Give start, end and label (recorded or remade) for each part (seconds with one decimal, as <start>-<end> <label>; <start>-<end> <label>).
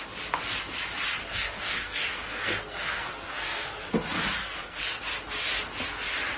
0.0-1.2 recorded; 1.2-3.9 remade; 3.9-4.4 recorded; 4.4-5.0 remade; 5.0-6.4 recorded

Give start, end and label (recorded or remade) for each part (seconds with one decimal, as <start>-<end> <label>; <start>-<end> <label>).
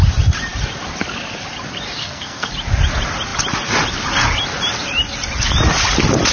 0.0-2.0 recorded; 2.0-2.5 remade; 2.5-6.3 recorded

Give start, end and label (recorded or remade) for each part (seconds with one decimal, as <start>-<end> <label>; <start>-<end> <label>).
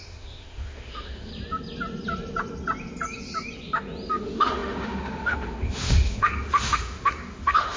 0.0-1.3 remade; 1.3-4.1 recorded; 4.1-7.8 remade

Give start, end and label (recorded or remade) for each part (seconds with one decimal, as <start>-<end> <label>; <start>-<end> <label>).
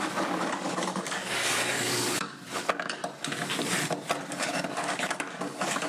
0.0-3.0 remade; 3.0-4.3 recorded; 4.3-5.9 remade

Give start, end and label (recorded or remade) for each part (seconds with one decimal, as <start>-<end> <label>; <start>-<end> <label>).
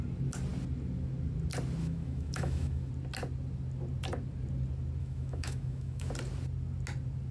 0.0-1.8 recorded; 1.8-2.9 remade; 2.9-5.0 recorded; 5.0-6.1 remade; 6.1-7.3 recorded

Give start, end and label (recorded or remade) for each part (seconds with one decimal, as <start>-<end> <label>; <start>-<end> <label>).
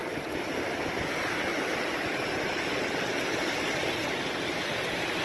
0.0-1.5 recorded; 1.5-3.4 remade; 3.4-4.0 recorded; 4.0-5.2 remade